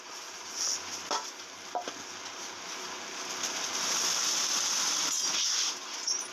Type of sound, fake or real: real